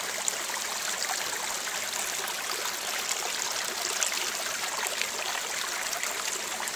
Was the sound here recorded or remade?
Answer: recorded